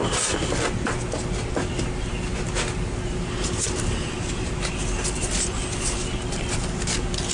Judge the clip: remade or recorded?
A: recorded